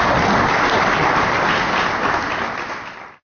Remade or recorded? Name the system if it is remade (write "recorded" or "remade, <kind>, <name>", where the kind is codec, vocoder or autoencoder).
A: recorded